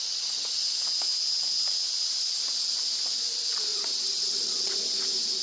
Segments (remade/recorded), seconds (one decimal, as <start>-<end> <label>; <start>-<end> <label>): 0.0-3.7 recorded; 3.7-4.7 remade; 4.7-5.4 recorded

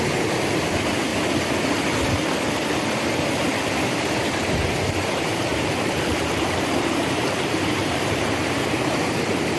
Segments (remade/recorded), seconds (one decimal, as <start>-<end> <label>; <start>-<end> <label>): 0.0-1.1 remade; 1.1-3.2 recorded; 3.2-9.6 remade

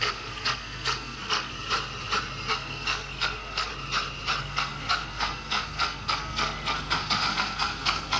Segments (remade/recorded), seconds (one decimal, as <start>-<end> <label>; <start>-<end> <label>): 0.0-1.5 remade; 1.5-2.5 recorded; 2.5-3.7 remade; 3.7-4.4 recorded; 4.4-8.2 remade

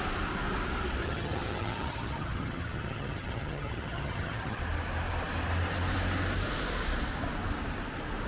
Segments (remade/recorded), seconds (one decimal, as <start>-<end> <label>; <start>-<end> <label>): 0.0-1.0 recorded; 1.0-4.6 remade; 4.6-8.3 recorded